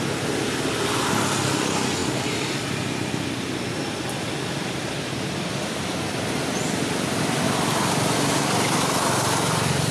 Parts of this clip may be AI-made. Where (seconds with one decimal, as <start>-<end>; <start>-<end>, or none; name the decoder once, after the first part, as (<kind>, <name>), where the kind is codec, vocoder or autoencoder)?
none